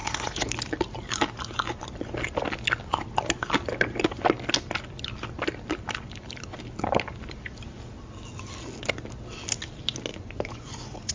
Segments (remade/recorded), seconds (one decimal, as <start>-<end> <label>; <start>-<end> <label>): 0.0-0.5 remade; 0.5-10.1 recorded; 10.1-11.1 remade